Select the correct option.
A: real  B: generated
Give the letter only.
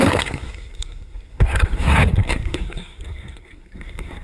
B